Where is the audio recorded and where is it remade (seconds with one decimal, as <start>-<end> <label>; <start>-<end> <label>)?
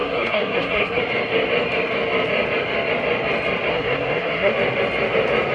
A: 0.0-1.0 remade; 1.0-3.7 recorded; 3.7-4.5 remade; 4.5-5.5 recorded